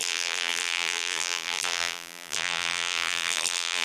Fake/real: fake